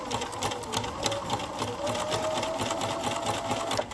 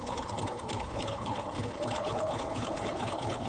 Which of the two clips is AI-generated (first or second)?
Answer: second